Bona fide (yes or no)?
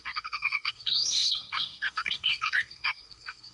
no